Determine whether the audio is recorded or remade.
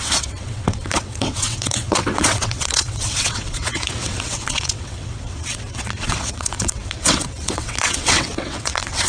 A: remade